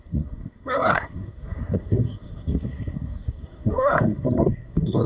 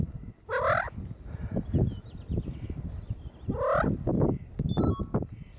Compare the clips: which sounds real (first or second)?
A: second